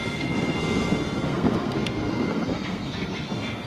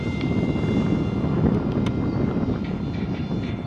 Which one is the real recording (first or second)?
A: second